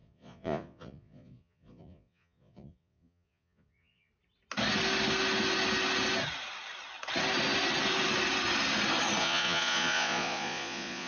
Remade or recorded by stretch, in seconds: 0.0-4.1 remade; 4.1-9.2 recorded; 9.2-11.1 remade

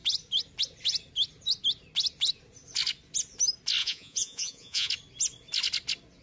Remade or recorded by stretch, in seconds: 0.0-3.8 recorded; 3.8-4.9 remade; 4.9-6.2 recorded